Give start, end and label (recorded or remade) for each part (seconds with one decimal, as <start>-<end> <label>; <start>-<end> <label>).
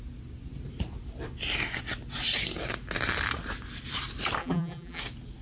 0.0-4.4 recorded; 4.4-5.0 remade; 5.0-5.4 recorded